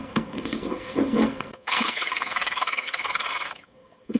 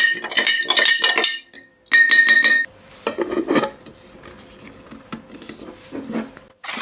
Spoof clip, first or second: first